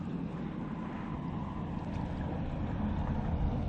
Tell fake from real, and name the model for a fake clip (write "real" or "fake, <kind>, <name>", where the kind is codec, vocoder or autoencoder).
real